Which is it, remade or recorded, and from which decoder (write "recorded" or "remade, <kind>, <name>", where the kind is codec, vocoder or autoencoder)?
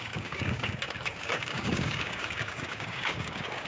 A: remade, codec, DAC